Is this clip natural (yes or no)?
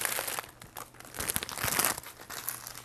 yes